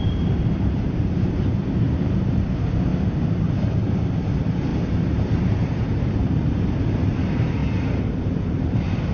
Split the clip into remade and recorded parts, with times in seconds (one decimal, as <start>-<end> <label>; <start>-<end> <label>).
0.0-2.9 remade; 2.9-3.9 recorded; 3.9-7.6 remade; 7.6-8.1 recorded; 8.1-9.1 remade

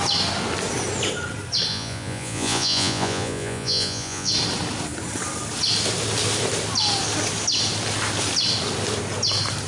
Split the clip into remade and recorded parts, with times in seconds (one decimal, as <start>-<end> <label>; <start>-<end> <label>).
0.0-1.7 recorded; 1.7-4.3 remade; 4.3-9.7 recorded

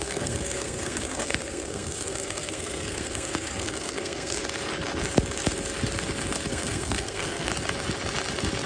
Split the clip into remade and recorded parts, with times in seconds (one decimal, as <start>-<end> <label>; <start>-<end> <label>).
0.0-4.4 remade; 4.4-6.5 recorded; 6.5-7.5 remade; 7.5-8.7 recorded

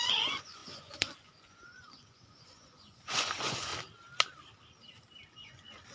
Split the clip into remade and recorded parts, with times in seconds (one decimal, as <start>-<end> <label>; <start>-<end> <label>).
0.0-3.7 remade; 3.7-5.3 recorded; 5.3-5.9 remade

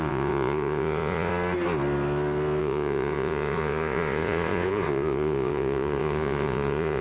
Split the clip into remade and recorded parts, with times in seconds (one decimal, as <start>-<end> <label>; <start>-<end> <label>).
0.0-1.3 remade; 1.3-2.6 recorded; 2.6-7.0 remade

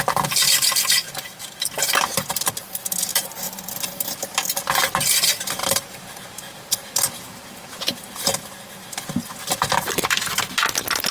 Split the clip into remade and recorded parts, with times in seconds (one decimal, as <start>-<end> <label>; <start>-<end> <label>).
0.0-1.0 recorded; 1.0-1.7 remade; 1.7-3.1 recorded; 3.1-3.7 remade; 3.7-5.6 recorded; 5.6-8.3 remade; 8.3-11.1 recorded